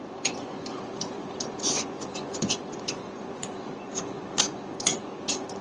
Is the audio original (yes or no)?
no